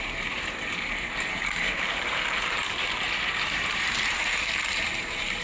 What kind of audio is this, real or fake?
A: fake